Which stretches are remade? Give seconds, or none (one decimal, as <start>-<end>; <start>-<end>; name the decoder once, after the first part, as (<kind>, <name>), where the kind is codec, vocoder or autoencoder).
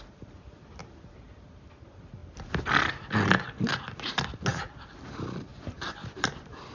5.5-6.3 (vocoder, BigVGAN v2)